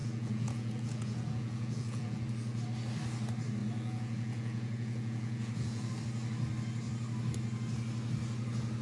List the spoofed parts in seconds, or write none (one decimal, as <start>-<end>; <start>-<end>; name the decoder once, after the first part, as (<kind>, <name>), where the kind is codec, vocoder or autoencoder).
0.0-2.6 (vocoder, Vocos); 3.6-5.9

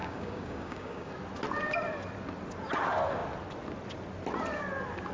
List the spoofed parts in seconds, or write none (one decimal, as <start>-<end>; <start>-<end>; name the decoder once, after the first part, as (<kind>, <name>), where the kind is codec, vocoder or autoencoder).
0.0-1.1 (codec, DAC)

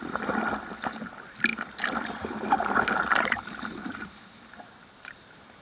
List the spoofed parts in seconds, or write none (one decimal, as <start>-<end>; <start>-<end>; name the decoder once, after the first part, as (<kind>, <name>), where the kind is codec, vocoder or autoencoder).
none

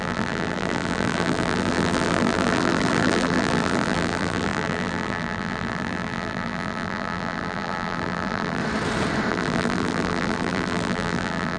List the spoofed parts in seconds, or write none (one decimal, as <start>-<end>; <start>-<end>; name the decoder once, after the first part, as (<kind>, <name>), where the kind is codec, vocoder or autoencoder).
0.0-8.6 (vocoder, BigVGAN v2); 9.3-11.6